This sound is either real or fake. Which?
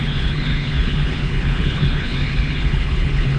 fake